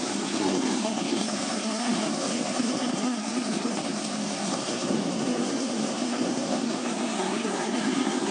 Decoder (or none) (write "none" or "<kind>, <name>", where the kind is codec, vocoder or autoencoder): codec, SNAC